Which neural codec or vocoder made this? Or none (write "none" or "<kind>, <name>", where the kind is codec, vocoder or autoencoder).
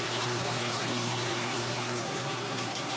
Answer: codec, SNAC